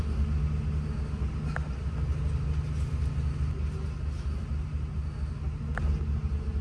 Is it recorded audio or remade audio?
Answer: recorded